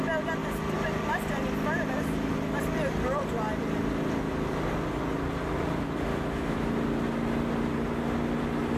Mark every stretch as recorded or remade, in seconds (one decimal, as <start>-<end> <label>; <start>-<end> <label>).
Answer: 0.0-6.1 recorded; 6.1-6.7 remade; 6.7-8.8 recorded